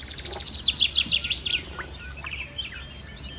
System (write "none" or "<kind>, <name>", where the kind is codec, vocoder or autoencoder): none